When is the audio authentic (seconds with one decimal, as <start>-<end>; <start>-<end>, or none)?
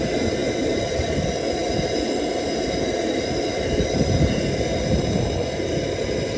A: 0.0-6.4